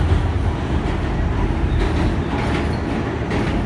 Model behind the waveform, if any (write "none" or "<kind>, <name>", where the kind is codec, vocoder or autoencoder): none